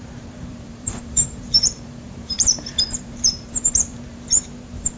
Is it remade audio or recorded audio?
remade